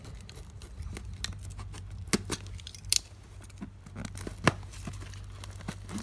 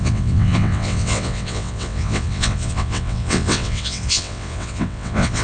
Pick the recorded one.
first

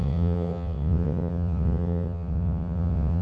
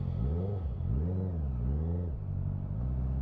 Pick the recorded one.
second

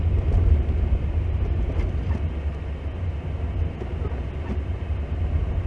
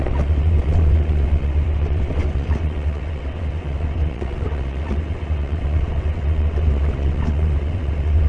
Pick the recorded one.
first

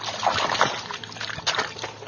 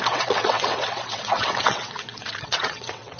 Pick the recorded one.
first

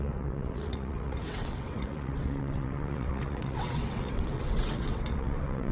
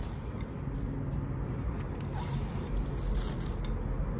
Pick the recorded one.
second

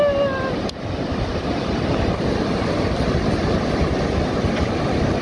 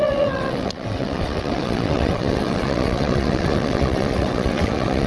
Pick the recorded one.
first